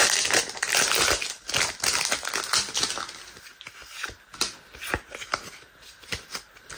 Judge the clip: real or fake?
real